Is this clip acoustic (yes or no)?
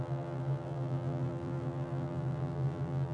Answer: no